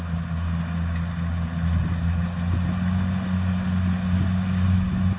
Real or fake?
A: real